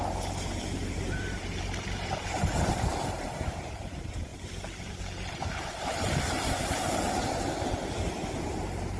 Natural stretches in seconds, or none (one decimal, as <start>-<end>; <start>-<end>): 4.3-4.9; 5.9-6.7